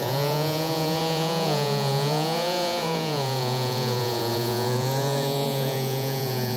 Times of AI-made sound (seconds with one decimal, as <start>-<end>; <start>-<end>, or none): 0.0-6.6

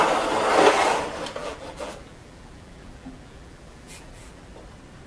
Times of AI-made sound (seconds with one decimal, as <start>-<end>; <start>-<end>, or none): 1.4-4.5

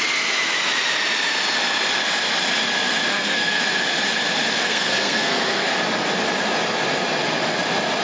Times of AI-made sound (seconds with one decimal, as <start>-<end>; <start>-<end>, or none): 3.1-3.6; 4.6-5.8

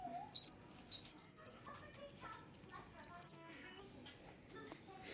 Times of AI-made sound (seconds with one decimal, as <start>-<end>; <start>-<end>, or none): 1.1-1.6; 3.2-3.8

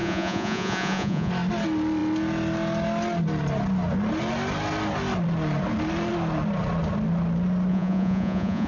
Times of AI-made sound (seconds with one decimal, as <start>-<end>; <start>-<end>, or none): 0.0-1.3; 7.7-8.7